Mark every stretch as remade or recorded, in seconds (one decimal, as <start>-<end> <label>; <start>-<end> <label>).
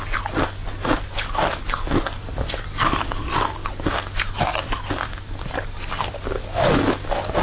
0.0-0.6 recorded; 0.6-3.2 remade; 3.2-4.5 recorded; 4.5-6.9 remade; 6.9-7.4 recorded